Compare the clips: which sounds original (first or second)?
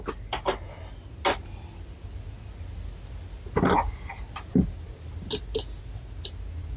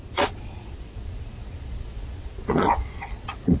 first